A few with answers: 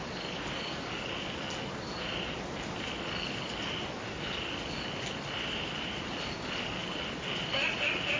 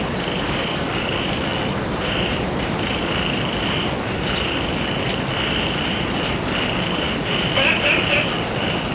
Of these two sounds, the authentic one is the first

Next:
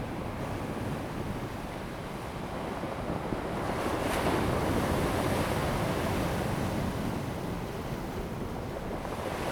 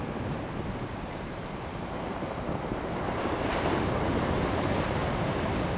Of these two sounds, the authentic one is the first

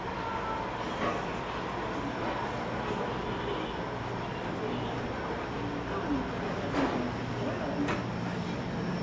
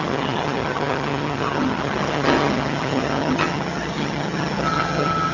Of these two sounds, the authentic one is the first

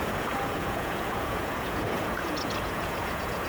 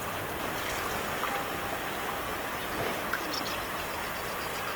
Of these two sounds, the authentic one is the second